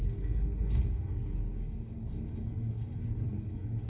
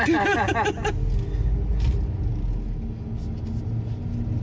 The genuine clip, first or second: second